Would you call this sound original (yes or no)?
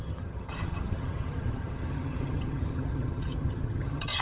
no